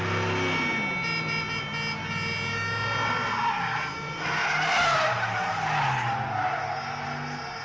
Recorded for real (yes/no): yes